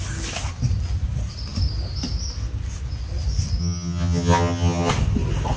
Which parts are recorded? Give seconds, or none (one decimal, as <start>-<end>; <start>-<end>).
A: 0.0-3.6; 4.9-5.6